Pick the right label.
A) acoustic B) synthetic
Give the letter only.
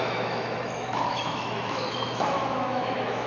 B